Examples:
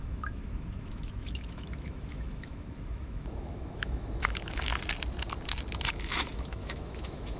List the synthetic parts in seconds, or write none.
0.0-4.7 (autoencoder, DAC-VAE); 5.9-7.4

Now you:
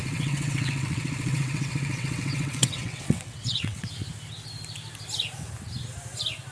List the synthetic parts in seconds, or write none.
0.0-3.9 (vocoder, WaveNeXt)

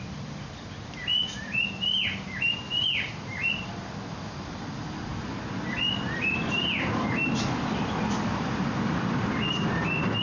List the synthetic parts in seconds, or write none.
0.0-10.2 (vocoder, BigVGAN v2)

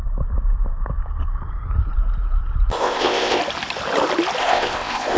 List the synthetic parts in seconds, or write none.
2.7-3.4 (codec, ZipCodec); 4.4-5.2